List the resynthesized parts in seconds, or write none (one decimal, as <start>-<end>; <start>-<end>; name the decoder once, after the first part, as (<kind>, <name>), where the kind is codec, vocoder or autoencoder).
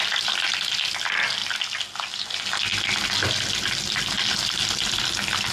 none